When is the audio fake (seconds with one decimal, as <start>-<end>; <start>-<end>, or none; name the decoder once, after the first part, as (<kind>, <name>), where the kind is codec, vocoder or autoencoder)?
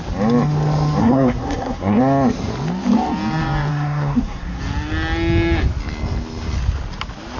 1.0-2.0 (codec, SNAC); 3.7-4.6